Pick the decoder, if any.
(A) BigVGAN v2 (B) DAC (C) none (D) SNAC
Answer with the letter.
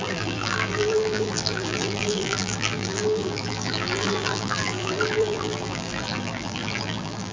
A